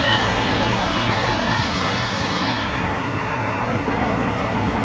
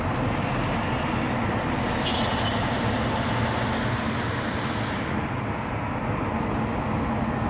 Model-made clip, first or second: first